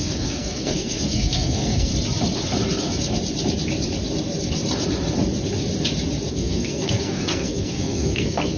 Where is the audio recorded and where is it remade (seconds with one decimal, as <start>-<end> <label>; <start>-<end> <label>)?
0.0-1.9 remade; 1.9-6.3 recorded; 6.3-8.6 remade